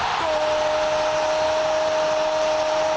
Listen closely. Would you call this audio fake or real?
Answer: real